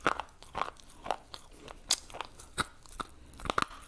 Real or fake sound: real